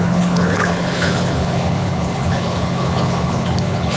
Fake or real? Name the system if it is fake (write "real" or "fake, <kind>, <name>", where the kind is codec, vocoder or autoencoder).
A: fake, codec, HILCodec